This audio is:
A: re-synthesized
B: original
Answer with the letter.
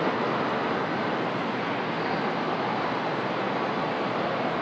B